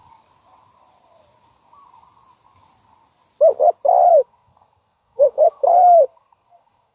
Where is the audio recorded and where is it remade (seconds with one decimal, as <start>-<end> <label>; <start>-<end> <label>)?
0.0-4.1 recorded; 4.1-6.9 remade